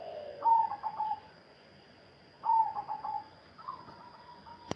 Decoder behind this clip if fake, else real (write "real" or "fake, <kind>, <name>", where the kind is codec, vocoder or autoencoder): fake, vocoder, Vocos